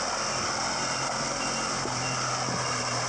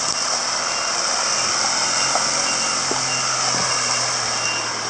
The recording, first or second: second